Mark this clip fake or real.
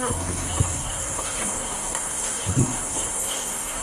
fake